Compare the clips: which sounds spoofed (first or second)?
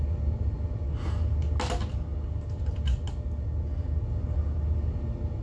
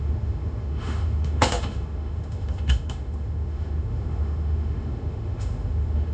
second